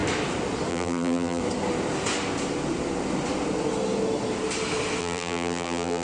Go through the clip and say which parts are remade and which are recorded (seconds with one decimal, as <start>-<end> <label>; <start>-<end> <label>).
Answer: 0.0-0.7 recorded; 0.7-1.4 remade; 1.4-5.0 recorded; 5.0-6.0 remade